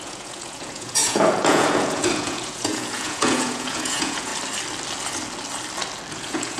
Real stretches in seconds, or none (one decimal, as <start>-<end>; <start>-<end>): 4.3-6.1